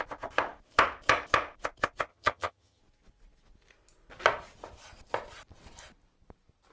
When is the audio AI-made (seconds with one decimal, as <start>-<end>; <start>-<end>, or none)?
2.1-2.8